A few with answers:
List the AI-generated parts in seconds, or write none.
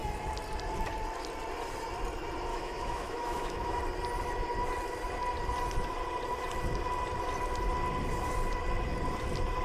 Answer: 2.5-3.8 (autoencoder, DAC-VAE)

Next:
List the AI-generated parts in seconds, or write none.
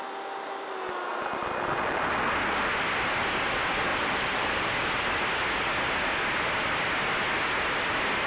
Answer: 3.9-4.7 (vocoder, BigVGAN v2)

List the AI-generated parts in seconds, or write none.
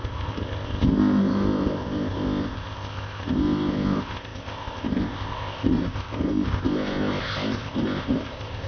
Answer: 0.0-8.7 (codec, ZipCodec)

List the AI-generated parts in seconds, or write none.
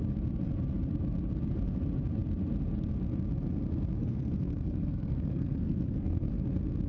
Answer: 4.0-6.3 (codec, SNAC)